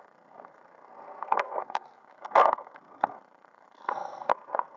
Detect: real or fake fake